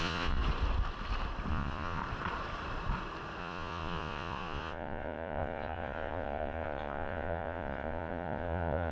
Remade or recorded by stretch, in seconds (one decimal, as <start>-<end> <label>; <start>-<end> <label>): 0.0-0.4 remade; 0.4-1.5 recorded; 1.5-2.0 remade; 2.0-3.4 recorded; 3.4-8.9 remade